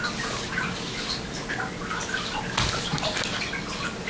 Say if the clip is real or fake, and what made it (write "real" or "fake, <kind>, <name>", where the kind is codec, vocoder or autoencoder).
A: real